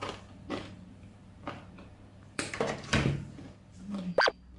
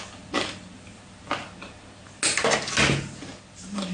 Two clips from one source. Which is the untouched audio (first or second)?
second